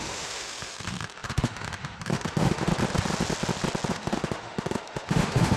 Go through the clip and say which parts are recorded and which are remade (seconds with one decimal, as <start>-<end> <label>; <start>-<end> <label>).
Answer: 0.0-2.7 remade; 2.7-3.9 recorded; 3.9-5.6 remade